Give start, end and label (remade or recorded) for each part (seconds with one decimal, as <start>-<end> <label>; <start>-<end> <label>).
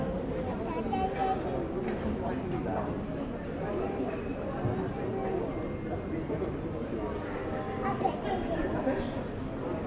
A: 0.0-9.9 recorded